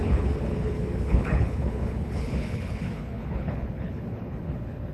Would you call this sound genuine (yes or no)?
no